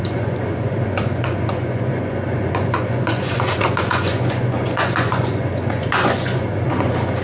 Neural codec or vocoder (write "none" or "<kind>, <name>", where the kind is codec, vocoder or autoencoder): vocoder, Vocos